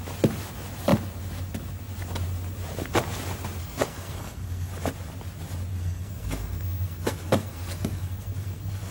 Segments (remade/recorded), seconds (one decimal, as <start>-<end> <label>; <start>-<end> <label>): 0.0-3.6 recorded; 3.6-4.7 remade; 4.7-5.7 recorded; 5.7-8.9 remade